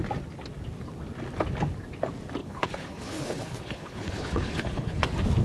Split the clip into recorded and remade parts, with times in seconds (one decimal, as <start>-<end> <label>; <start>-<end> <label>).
0.0-2.4 recorded; 2.4-5.0 remade; 5.0-5.4 recorded